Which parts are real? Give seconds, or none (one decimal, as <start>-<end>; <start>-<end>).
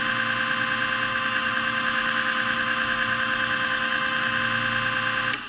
0.0-1.1; 4.4-5.5